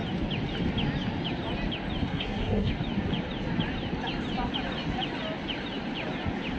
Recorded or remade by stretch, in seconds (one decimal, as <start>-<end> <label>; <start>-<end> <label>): 0.0-2.0 recorded; 2.0-2.7 remade; 2.7-6.6 recorded